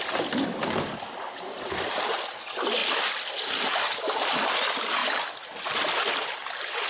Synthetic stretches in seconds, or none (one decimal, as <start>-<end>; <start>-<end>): none